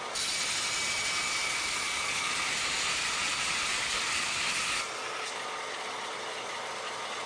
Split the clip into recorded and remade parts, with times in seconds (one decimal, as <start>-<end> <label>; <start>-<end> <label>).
0.0-1.4 recorded; 1.4-2.3 remade; 2.3-3.7 recorded; 3.7-4.5 remade; 4.5-7.3 recorded